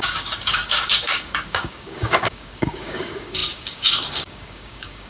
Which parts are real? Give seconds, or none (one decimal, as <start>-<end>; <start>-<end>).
none